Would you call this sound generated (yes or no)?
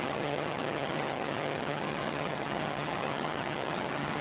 yes